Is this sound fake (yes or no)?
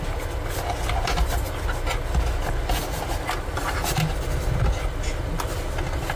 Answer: no